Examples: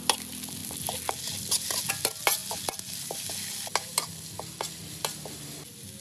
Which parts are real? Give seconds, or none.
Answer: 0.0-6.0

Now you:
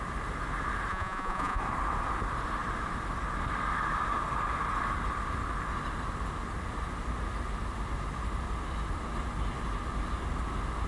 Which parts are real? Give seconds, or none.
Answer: 0.0-0.9; 1.6-10.9

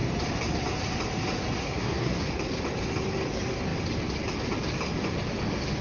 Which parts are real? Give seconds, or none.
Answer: 0.0-1.6; 2.2-5.8

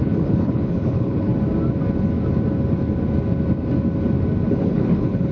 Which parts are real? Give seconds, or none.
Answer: 1.3-4.5

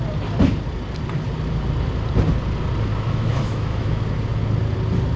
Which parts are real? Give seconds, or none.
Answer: 0.0-2.9; 4.0-5.2

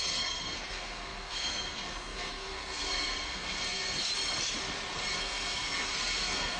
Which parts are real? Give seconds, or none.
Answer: 4.1-5.1

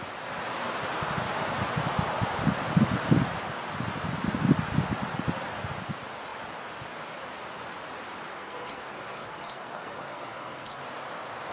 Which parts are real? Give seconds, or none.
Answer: 0.0-8.3; 10.8-11.5